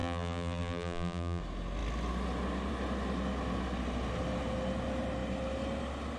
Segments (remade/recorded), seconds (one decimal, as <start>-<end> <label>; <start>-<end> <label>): 0.0-1.4 remade; 1.4-6.2 recorded